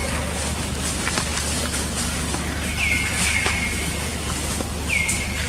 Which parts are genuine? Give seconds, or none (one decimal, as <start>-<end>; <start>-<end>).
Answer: 0.0-5.5